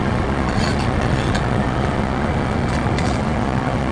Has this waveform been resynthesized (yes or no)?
yes